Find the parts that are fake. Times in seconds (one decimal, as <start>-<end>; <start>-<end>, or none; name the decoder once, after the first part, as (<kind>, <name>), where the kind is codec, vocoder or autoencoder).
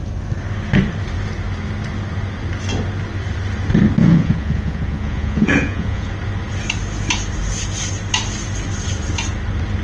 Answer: 4.0-6.1 (vocoder, Vocos)